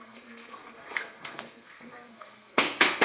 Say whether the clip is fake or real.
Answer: fake